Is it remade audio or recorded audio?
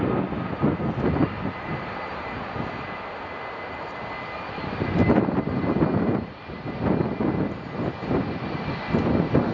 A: recorded